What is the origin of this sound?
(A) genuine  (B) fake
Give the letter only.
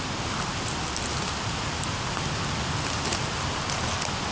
A